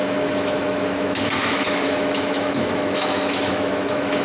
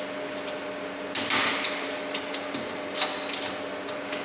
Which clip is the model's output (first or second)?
first